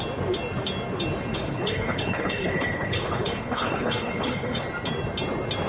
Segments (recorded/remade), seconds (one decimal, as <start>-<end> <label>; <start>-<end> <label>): 0.0-1.3 recorded; 1.3-4.7 remade; 4.7-5.7 recorded